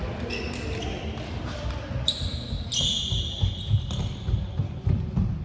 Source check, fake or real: real